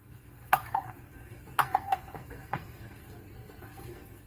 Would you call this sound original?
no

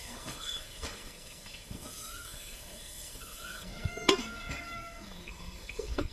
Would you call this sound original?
no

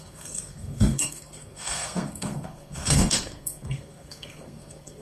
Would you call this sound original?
no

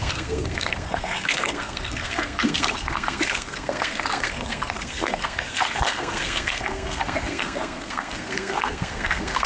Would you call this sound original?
no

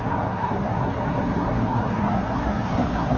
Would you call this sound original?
no